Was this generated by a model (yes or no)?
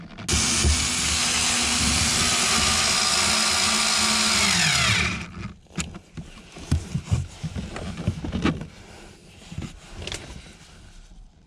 no